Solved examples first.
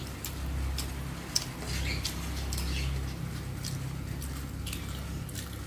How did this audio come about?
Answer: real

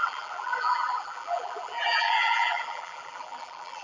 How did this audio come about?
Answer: fake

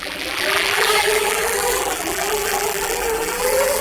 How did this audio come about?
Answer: fake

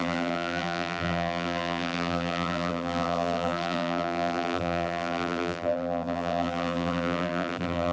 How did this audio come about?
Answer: fake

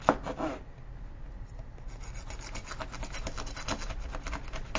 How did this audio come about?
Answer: real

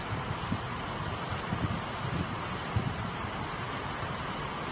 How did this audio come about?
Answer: fake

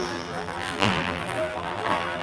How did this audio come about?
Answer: fake